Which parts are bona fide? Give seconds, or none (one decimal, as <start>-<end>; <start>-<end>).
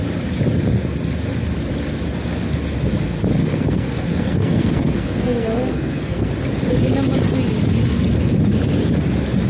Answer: 0.0-3.4; 6.3-9.5